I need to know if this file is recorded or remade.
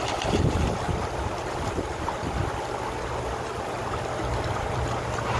recorded